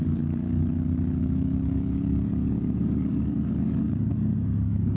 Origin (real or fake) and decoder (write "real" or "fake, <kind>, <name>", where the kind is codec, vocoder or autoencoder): fake, codec, DAC